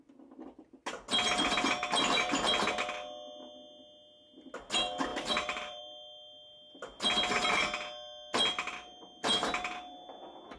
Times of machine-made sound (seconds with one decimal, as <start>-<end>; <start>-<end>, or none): 5.1-5.8